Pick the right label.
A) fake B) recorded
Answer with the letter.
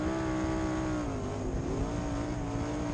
B